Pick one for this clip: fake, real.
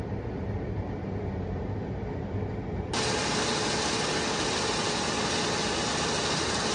real